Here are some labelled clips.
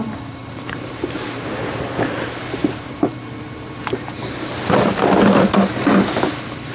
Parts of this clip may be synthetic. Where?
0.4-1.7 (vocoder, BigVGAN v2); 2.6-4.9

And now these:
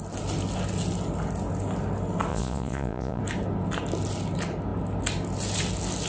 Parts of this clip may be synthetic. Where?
2.3-3.2 (vocoder, Vocos)

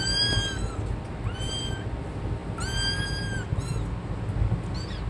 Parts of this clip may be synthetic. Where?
none

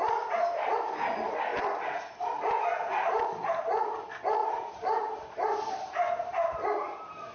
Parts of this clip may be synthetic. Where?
1.5-2.4 (vocoder, BigVGAN v2); 4.4-5.9

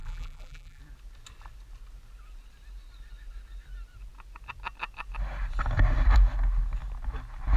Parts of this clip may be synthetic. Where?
0.0-0.8 (vocoder, BigVGAN v2)

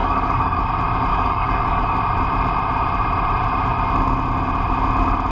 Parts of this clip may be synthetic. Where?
0.0-0.7 (codec, DAC); 1.1-2.0

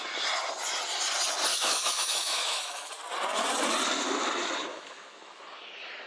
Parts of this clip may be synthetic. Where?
1.5-2.9 (autoencoder, DAC-VAE); 4.7-5.4

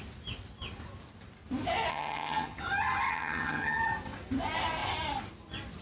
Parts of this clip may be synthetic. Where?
1.9-2.6 (vocoder, HiFi-GAN); 3.1-3.8